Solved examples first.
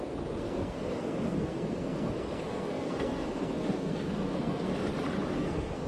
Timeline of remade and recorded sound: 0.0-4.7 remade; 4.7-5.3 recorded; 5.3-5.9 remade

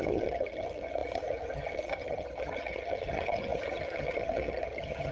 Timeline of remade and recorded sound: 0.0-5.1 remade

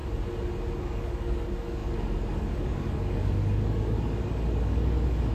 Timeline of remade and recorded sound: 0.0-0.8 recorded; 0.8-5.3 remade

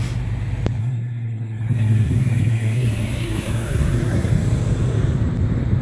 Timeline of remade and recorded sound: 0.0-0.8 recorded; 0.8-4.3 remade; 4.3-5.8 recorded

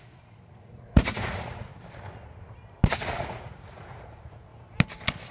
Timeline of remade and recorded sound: 0.0-1.7 remade; 1.7-2.9 recorded; 2.9-4.5 remade; 4.5-5.3 recorded